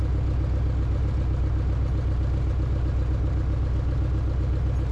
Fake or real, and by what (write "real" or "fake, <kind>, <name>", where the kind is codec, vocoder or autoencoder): real